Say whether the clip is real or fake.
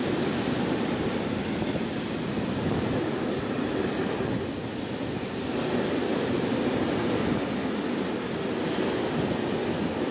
real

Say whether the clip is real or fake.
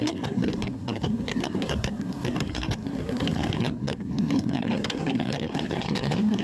fake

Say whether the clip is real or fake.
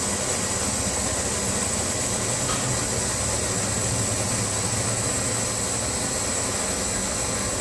real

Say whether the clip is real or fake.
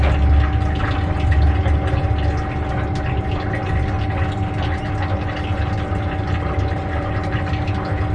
real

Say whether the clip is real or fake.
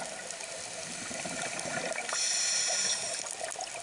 real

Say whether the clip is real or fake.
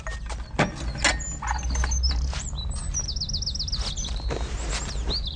real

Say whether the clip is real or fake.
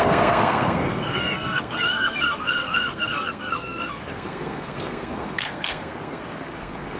fake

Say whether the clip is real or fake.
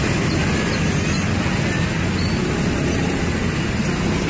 real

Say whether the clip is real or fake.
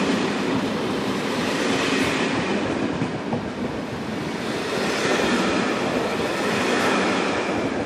real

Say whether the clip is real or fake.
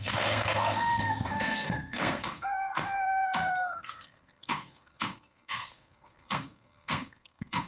fake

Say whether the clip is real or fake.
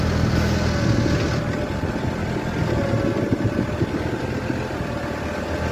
real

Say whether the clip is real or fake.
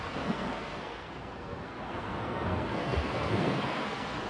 fake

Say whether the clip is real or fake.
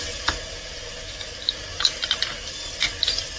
real